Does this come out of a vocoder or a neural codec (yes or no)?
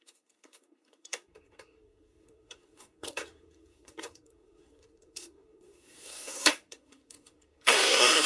yes